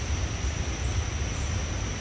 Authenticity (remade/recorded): recorded